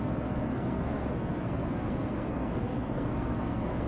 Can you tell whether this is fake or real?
fake